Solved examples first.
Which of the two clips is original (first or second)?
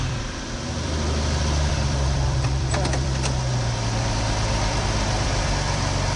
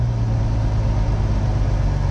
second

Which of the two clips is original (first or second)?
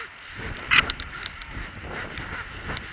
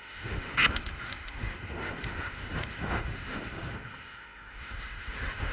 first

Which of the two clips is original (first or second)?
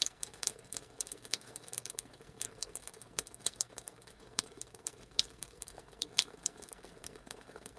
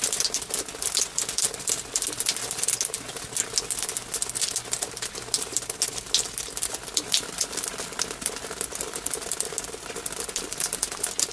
second